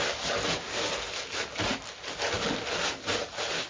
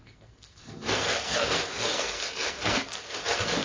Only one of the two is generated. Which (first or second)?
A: second